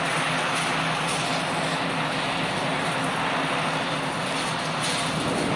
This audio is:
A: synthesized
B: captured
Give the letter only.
B